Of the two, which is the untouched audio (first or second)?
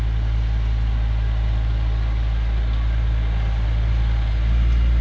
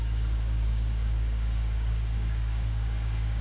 first